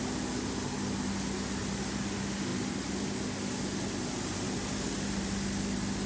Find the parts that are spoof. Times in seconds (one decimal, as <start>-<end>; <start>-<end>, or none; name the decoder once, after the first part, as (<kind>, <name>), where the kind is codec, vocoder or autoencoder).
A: none